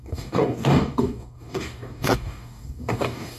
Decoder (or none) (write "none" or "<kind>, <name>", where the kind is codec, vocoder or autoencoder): codec, DAC